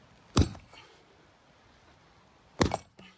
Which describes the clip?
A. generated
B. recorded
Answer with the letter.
B